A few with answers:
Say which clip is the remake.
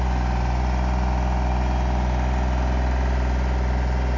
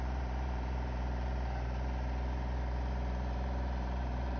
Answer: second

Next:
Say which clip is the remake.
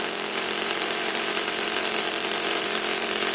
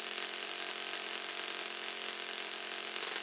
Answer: first